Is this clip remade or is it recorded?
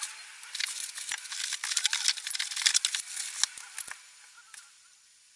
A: recorded